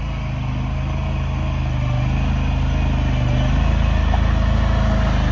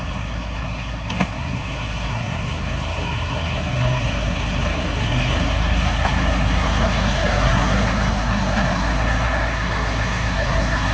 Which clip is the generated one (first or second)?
second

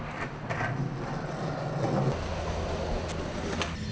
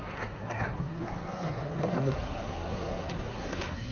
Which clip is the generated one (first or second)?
second